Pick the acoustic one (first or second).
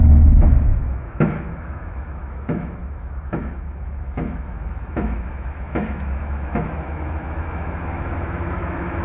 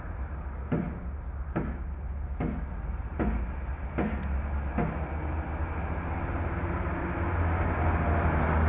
second